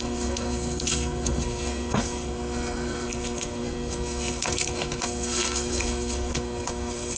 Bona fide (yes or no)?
no